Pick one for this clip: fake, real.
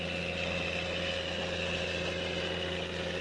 real